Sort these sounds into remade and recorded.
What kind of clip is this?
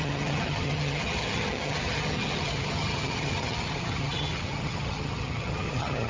remade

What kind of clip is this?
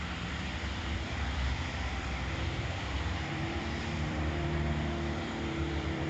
remade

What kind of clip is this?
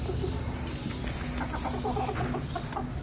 recorded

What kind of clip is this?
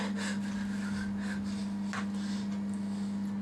recorded